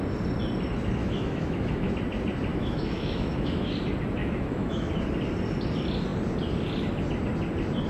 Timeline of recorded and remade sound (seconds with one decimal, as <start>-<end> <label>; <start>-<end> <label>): 0.0-1.0 recorded; 1.0-1.9 remade; 1.9-2.5 recorded; 2.5-3.7 remade; 3.7-4.2 recorded; 4.2-4.9 remade; 4.9-7.9 recorded